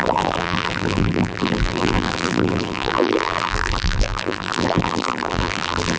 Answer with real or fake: fake